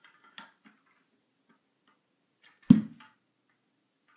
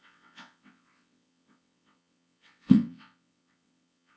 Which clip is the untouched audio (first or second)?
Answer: first